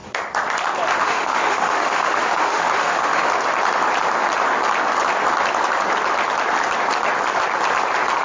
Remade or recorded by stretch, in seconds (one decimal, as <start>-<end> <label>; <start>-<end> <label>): 0.0-0.9 recorded; 0.9-3.3 remade; 3.3-8.2 recorded

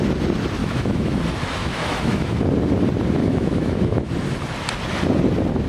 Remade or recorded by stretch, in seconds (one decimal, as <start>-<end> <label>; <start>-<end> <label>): 0.0-0.6 recorded; 0.6-1.2 remade; 1.2-1.6 recorded; 1.6-2.4 remade; 2.4-3.2 recorded; 3.2-4.1 remade; 4.1-5.7 recorded